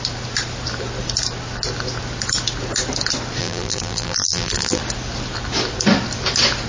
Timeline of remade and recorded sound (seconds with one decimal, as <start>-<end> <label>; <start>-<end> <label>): 0.0-3.4 recorded; 3.4-4.8 remade; 4.8-6.7 recorded